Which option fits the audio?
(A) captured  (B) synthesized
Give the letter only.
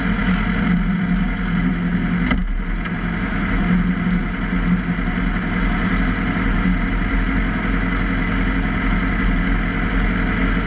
A